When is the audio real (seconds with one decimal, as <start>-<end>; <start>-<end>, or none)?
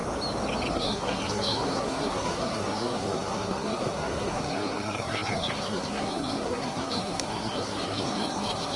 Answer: 0.0-0.7